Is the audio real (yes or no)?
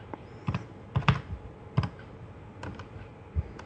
yes